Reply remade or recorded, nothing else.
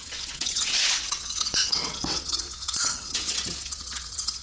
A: remade